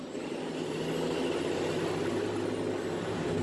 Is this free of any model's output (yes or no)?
yes